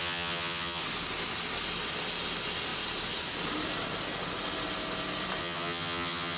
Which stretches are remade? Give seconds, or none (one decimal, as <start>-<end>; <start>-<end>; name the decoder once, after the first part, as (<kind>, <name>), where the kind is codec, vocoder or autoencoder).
0.0-0.8 (vocoder, HiFi-GAN); 5.4-6.4